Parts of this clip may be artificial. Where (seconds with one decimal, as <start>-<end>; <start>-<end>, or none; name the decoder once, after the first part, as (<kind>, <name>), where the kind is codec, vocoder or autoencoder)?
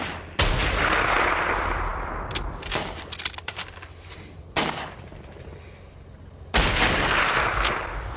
none